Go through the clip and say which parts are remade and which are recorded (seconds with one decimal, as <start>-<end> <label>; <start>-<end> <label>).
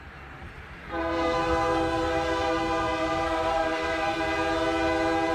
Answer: 0.0-1.0 recorded; 1.0-4.2 remade; 4.2-5.3 recorded